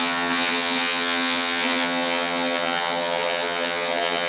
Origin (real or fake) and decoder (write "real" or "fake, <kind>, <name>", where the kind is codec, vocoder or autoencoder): fake, vocoder, HiFi-GAN